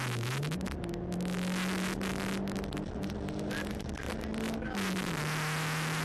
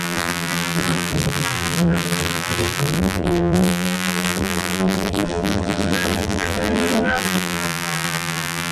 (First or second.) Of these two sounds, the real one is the first